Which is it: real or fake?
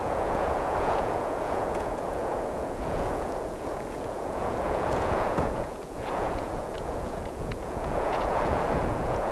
fake